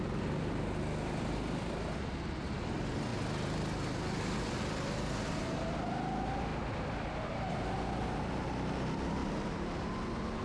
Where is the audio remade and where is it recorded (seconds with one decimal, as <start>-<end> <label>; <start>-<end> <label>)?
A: 0.0-9.2 recorded; 9.2-9.9 remade; 9.9-10.4 recorded